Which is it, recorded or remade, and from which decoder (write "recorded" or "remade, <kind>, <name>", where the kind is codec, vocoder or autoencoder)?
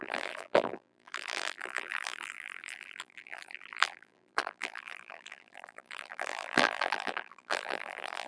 remade, vocoder, BigVGAN v2